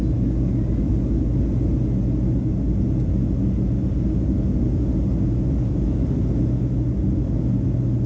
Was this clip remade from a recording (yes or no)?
no